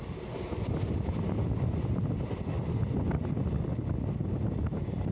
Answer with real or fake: real